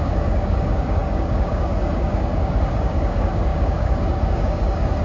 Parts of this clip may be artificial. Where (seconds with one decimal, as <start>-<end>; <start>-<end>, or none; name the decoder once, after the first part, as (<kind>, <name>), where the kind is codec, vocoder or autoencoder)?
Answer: 0.0-5.0 (codec, DAC)